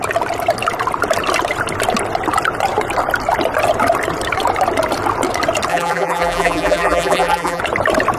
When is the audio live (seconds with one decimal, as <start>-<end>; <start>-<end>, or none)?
0.0-5.7; 7.6-8.2